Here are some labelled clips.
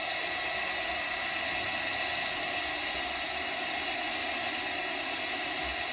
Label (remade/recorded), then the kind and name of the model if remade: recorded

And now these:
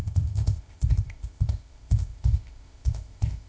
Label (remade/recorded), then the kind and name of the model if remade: remade, codec, ZipCodec